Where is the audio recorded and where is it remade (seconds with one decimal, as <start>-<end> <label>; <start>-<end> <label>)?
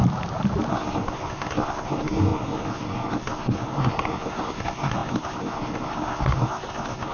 0.0-0.7 recorded; 0.7-7.1 remade